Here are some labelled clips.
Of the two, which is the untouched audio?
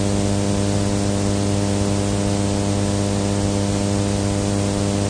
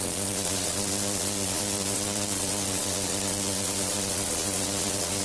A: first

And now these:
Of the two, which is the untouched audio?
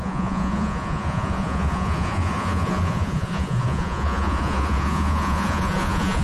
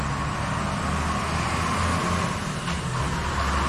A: second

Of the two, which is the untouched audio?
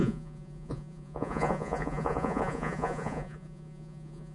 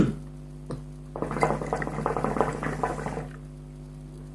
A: second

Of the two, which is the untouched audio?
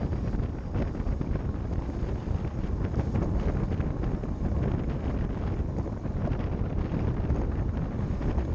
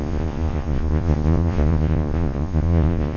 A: first